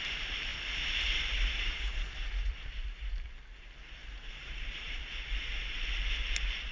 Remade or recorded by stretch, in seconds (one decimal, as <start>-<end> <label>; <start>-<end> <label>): 0.0-5.1 remade; 5.1-6.7 recorded